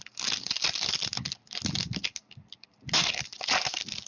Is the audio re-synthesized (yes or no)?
no